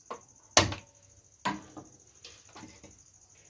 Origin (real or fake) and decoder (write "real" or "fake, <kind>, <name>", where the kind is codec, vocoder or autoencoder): real